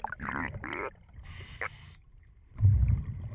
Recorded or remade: recorded